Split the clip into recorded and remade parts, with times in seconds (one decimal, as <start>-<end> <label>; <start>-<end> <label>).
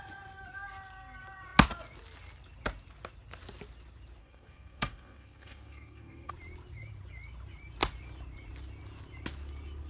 0.0-4.2 recorded; 4.2-6.3 remade; 6.3-9.9 recorded